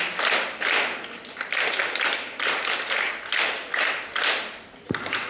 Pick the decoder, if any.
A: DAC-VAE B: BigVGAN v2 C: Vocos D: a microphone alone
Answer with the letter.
D